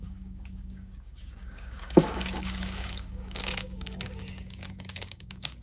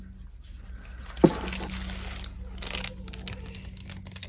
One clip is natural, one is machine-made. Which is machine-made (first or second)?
first